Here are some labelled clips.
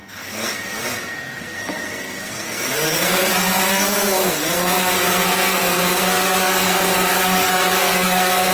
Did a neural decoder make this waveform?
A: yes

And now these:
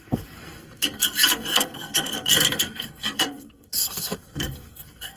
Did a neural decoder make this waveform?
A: yes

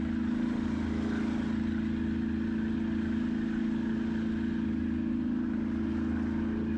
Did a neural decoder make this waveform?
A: no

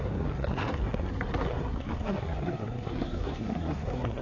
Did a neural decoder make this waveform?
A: yes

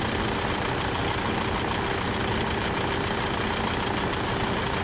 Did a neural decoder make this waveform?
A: no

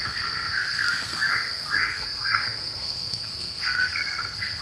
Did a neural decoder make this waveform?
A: yes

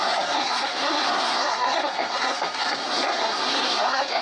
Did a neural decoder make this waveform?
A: yes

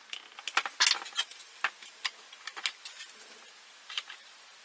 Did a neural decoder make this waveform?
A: no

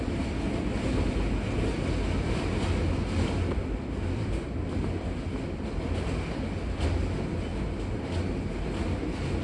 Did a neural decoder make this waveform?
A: no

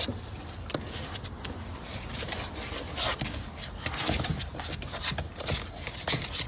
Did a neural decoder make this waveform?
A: no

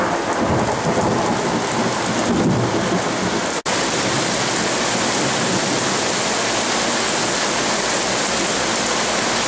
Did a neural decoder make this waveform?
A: no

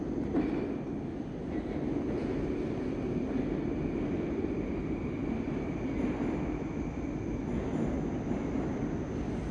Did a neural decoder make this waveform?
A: no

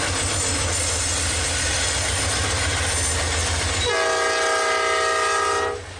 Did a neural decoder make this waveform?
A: no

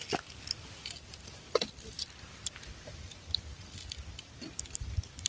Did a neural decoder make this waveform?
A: no